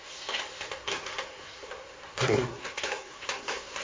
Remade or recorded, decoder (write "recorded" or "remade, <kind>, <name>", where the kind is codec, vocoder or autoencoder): remade, codec, SNAC